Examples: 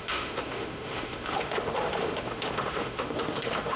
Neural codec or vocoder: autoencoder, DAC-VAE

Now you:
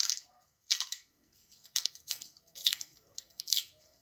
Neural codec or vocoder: codec, SNAC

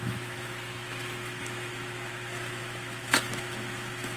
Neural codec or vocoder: autoencoder, DAC-VAE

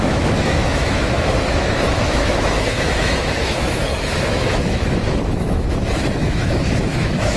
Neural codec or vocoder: autoencoder, DAC-VAE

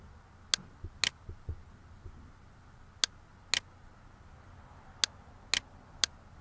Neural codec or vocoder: none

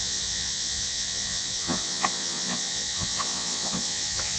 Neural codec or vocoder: vocoder, Vocos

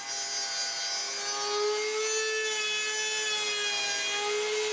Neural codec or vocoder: none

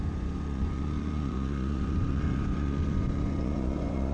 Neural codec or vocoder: vocoder, Vocos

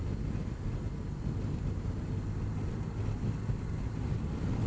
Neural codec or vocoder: none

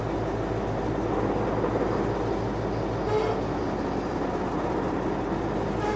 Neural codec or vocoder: none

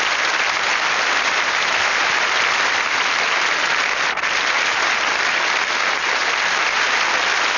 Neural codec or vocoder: none